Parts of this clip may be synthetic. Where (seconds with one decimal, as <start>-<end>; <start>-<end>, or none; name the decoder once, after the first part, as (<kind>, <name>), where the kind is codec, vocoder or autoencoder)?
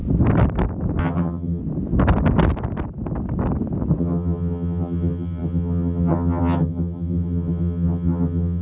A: 1.0-1.6 (vocoder, HiFi-GAN); 4.0-8.6